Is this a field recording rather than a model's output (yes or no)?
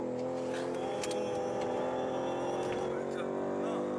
yes